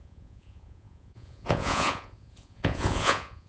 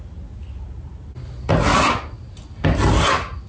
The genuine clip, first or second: second